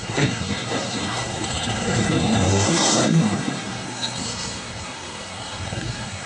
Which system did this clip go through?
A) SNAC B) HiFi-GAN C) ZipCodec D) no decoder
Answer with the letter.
A